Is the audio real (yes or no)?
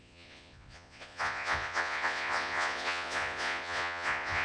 no